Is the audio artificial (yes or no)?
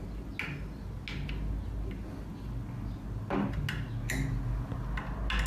no